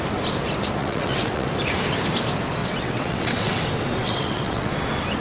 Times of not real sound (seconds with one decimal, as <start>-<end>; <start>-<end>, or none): 0.8-1.5; 2.6-3.6; 4.0-4.7